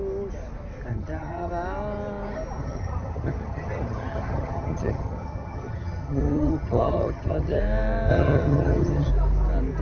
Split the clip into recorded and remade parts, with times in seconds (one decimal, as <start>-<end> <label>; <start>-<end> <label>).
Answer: 0.0-0.9 recorded; 0.9-1.5 remade; 1.5-2.6 recorded; 2.6-7.6 remade; 7.6-8.1 recorded; 8.1-9.1 remade; 9.1-9.8 recorded